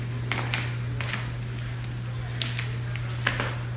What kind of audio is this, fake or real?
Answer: real